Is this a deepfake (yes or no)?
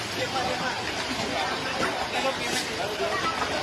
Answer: no